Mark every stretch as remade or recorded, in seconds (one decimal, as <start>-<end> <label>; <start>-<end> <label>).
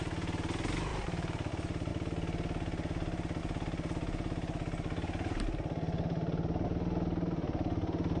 0.0-0.9 recorded; 0.9-1.5 remade; 1.5-8.2 recorded